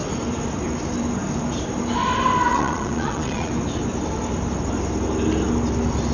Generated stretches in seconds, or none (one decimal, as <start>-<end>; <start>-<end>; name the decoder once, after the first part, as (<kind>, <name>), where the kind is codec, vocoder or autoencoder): 2.5-3.5 (vocoder, Vocos)